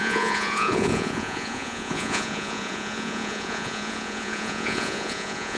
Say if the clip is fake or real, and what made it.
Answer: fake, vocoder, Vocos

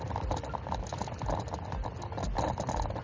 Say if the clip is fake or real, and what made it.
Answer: real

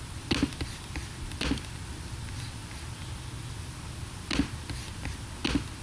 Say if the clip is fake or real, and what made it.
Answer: real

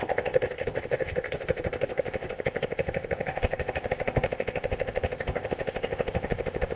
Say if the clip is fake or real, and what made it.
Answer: fake, codec, ZipCodec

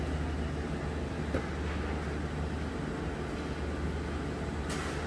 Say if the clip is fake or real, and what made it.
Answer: real